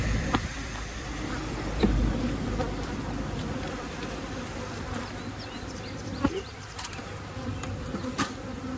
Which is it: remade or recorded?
remade